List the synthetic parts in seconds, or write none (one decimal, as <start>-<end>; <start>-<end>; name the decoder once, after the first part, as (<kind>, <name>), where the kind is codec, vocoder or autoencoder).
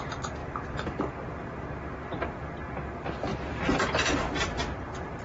0.4-1.1 (vocoder, BigVGAN v2); 3.3-5.2